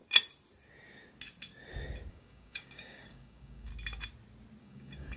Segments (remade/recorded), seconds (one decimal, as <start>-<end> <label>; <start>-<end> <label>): 0.0-2.1 recorded; 2.1-3.7 remade; 3.7-4.6 recorded; 4.6-5.2 remade